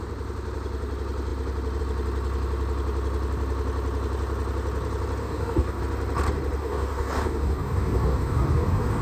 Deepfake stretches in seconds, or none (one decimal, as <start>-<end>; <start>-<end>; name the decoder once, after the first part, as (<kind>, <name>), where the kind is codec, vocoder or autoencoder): 5.2-5.8 (codec, DAC); 6.6-9.0